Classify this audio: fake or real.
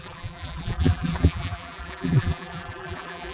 fake